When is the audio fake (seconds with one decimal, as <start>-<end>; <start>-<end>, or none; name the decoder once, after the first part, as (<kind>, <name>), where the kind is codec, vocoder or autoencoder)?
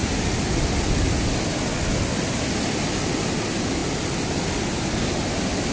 none